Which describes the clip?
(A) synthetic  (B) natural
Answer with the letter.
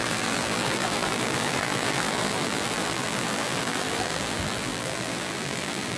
A